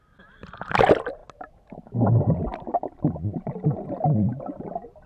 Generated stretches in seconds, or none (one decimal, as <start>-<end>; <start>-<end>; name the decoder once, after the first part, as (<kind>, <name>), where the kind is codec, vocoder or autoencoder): none

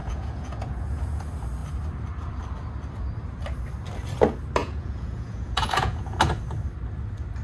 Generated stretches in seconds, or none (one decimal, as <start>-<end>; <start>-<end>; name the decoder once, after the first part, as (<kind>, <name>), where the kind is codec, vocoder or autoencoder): 0.0-1.2 (vocoder, Vocos); 4.6-6.2

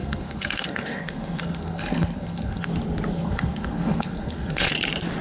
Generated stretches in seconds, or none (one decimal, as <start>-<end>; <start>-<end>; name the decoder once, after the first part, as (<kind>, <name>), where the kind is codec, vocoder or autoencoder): 0.0-2.7 (codec, SNAC); 3.1-4.7

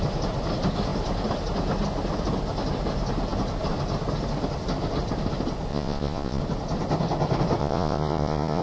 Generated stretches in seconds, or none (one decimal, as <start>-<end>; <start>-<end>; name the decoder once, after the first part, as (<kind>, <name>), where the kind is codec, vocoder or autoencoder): 5.7-6.4 (vocoder, Vocos); 7.6-8.6

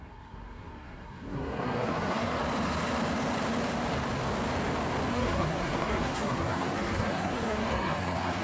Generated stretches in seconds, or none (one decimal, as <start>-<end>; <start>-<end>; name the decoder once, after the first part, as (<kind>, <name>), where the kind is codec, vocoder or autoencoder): 0.0-2.4 (codec, SNAC); 5.1-8.4